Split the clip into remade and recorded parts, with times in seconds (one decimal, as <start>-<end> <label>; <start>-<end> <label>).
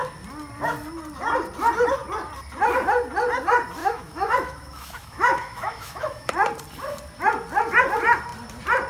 0.0-3.8 recorded; 3.8-6.3 remade; 6.3-8.9 recorded